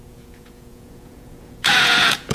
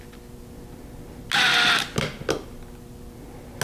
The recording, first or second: second